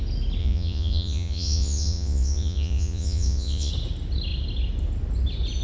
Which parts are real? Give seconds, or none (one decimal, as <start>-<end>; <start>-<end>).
0.0-0.4; 3.7-5.6